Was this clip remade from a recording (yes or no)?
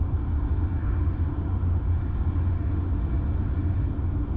no